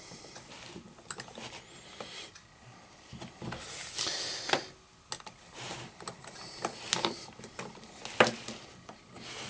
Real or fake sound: real